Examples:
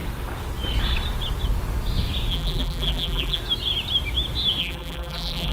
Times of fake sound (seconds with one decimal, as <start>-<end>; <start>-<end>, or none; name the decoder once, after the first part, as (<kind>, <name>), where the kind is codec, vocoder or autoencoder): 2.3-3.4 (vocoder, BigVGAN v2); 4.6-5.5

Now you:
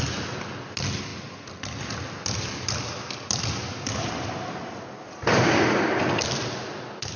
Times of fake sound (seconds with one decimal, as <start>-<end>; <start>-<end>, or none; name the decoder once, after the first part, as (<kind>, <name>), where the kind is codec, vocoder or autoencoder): none

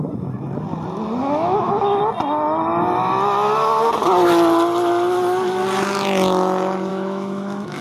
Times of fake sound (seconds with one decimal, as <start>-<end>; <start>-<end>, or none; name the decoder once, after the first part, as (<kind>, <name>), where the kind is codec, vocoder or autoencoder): 1.2-2.0 (autoencoder, DAC-VAE); 6.9-7.8